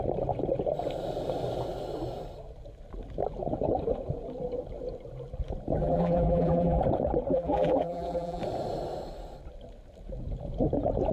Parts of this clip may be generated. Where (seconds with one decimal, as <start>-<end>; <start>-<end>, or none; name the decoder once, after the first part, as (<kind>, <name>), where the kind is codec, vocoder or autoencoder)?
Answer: 5.8-6.8 (vocoder, BigVGAN v2); 7.3-8.4